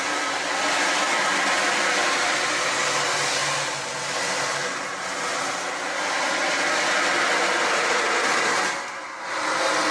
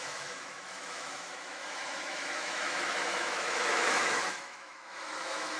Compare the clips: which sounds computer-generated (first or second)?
second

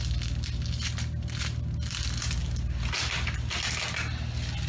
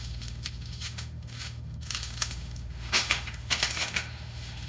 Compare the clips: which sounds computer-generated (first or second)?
second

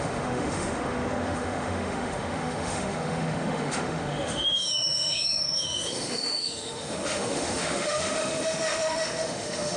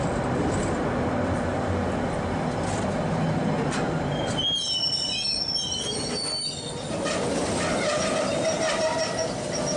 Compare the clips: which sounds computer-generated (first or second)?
first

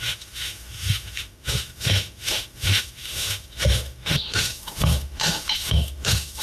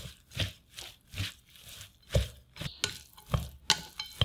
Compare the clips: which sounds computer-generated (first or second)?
first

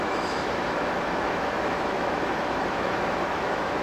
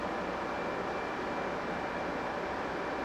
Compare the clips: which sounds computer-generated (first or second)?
first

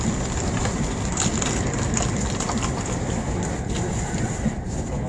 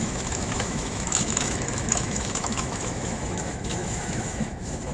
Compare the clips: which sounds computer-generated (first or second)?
second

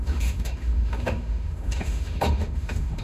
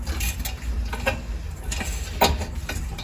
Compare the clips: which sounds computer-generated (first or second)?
first